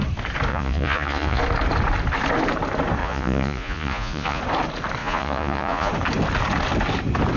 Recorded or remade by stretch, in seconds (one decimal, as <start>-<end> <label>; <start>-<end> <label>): 0.0-0.5 recorded; 0.5-1.4 remade; 1.4-3.0 recorded; 3.0-4.4 remade; 4.4-5.0 recorded; 5.0-5.9 remade; 5.9-7.4 recorded